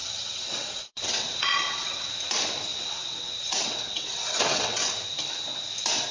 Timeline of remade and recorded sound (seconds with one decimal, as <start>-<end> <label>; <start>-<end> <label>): 0.0-2.1 remade; 2.1-2.7 recorded; 2.7-4.9 remade; 4.9-6.1 recorded